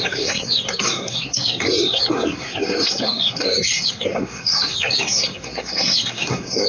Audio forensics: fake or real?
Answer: fake